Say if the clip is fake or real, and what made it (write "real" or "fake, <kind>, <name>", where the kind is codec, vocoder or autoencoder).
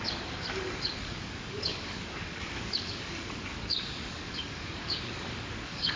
fake, codec, DAC